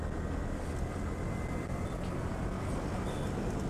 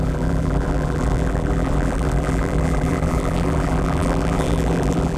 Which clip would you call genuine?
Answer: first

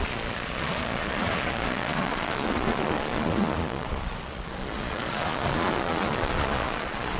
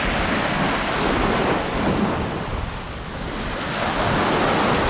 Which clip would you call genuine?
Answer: second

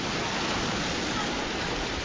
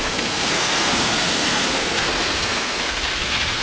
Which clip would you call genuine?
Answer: first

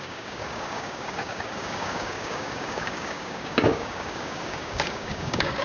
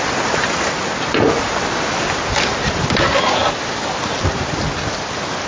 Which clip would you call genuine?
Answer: second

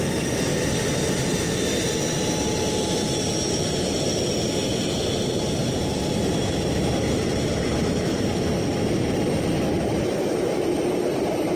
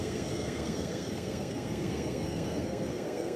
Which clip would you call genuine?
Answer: first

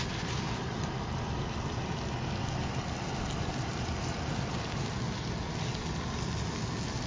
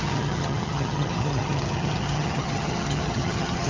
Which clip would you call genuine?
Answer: first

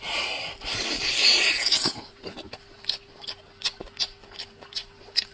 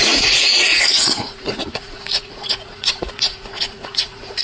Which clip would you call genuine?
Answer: first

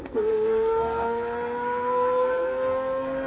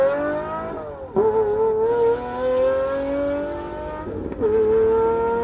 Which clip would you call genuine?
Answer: second